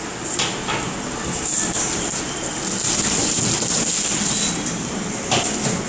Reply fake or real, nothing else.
real